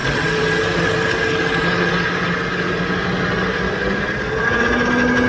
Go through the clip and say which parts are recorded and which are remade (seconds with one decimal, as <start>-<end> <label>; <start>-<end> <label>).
0.0-5.3 recorded